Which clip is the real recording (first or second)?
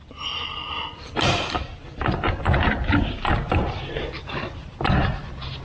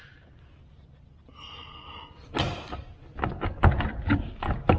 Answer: second